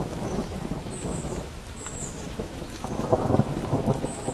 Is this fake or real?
fake